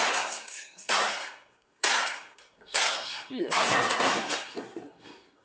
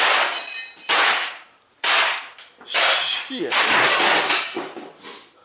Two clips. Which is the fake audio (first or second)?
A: first